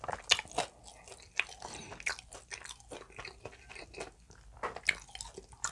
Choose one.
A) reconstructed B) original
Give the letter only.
B